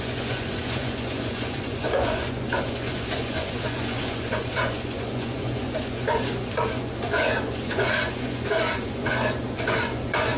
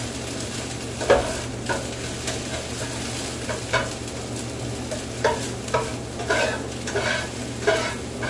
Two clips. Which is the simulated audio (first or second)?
first